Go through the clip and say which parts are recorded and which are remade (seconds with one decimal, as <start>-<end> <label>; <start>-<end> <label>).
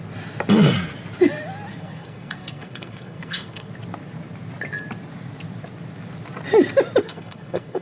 0.0-1.7 recorded; 1.7-3.7 remade; 3.7-7.0 recorded; 7.0-7.8 remade